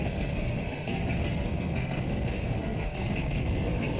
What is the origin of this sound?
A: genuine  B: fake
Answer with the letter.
B